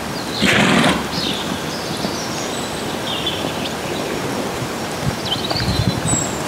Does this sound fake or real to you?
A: real